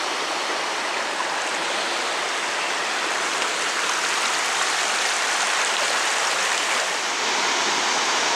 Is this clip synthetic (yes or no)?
no